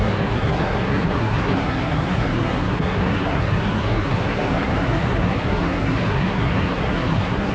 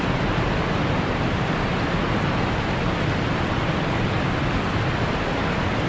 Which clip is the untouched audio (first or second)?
second